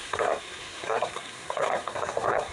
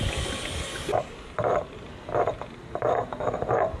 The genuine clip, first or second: second